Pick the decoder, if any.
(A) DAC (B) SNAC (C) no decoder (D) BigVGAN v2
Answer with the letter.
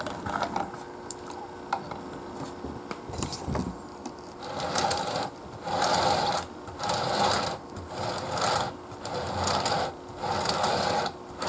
C